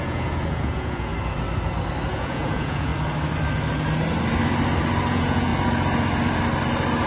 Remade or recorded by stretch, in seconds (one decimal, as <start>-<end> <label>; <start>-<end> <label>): 0.0-1.1 remade; 1.1-2.1 recorded; 2.1-2.9 remade; 2.9-5.1 recorded; 5.1-5.5 remade; 5.5-7.1 recorded